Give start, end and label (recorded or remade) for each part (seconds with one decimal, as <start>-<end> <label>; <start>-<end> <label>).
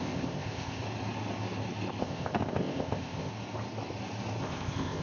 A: 0.0-0.8 remade; 0.8-2.0 recorded; 2.0-3.3 remade; 3.3-4.4 recorded; 4.4-5.0 remade